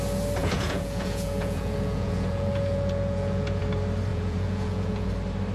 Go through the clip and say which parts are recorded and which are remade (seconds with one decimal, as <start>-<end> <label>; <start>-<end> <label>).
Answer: 0.0-0.4 recorded; 0.4-3.6 remade; 3.6-4.1 recorded; 4.1-5.1 remade; 5.1-5.5 recorded